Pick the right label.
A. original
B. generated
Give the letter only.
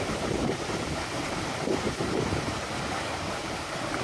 B